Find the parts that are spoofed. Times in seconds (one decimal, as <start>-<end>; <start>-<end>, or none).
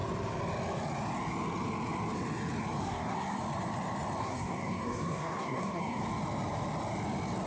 2.8-3.4; 4.2-6.0